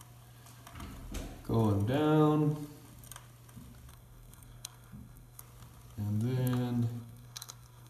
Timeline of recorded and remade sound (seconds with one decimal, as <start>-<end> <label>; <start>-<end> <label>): 0.0-3.9 recorded; 3.9-5.4 remade; 5.4-7.0 recorded; 7.0-7.9 remade